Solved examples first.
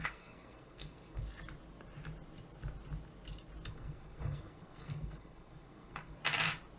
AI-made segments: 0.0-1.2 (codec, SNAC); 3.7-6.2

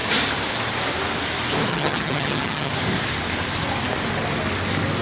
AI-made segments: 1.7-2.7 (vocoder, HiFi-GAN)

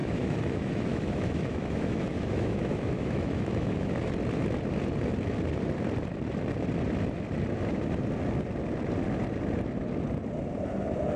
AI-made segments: 0.0-3.9 (autoencoder, DAC-VAE)